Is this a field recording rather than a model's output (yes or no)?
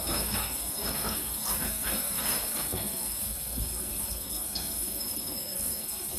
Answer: no